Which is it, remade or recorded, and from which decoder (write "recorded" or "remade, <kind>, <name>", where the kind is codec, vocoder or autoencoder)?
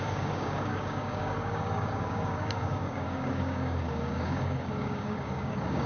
remade, codec, DAC